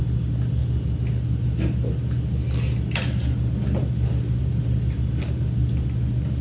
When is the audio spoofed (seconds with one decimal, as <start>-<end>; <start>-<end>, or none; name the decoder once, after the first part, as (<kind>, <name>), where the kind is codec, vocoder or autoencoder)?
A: none